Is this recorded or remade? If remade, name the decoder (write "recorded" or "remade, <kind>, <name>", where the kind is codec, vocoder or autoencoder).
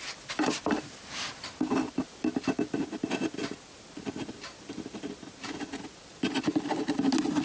recorded